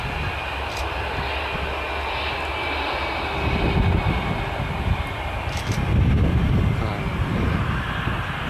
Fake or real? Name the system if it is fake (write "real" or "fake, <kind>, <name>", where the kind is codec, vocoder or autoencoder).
real